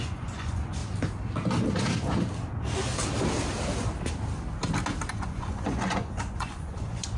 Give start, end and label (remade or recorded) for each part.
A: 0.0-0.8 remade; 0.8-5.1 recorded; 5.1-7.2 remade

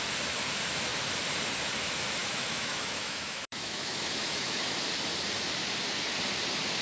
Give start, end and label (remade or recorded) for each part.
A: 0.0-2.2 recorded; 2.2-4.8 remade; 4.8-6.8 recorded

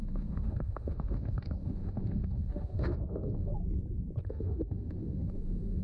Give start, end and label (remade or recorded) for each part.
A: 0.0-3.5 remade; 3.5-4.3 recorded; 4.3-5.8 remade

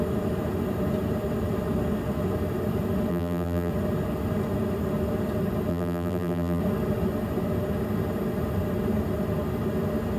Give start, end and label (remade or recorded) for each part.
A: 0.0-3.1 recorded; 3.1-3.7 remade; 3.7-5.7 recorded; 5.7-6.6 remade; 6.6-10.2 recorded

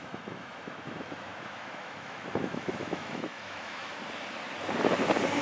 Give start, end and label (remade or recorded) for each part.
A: 0.0-3.9 remade; 3.9-5.4 recorded